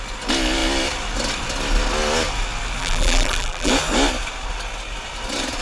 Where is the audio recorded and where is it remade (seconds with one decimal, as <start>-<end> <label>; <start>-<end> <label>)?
0.0-2.8 recorded; 2.8-3.7 remade; 3.7-5.6 recorded

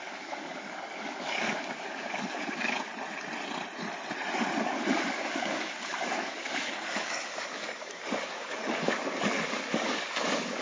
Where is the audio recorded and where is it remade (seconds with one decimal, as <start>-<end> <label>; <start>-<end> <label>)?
0.0-2.9 remade; 2.9-4.6 recorded; 4.6-10.6 remade

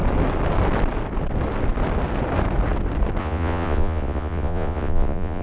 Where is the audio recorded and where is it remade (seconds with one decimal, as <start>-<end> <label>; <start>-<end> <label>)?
0.0-3.2 recorded; 3.2-5.4 remade

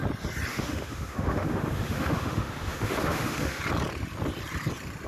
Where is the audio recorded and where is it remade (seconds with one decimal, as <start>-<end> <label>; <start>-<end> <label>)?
0.0-0.5 recorded; 0.5-3.6 remade; 3.6-5.1 recorded

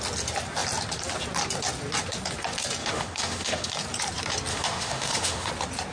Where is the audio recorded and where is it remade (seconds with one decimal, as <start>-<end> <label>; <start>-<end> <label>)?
0.0-2.8 recorded; 2.8-3.7 remade; 3.7-4.5 recorded; 4.5-5.5 remade; 5.5-5.9 recorded